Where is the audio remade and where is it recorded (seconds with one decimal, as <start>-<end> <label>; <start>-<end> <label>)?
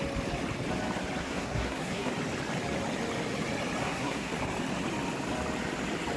0.0-1.2 recorded; 1.2-2.1 remade; 2.1-3.8 recorded; 3.8-4.4 remade; 4.4-6.2 recorded